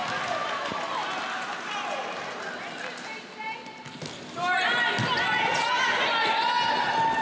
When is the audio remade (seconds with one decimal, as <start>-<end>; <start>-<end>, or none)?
none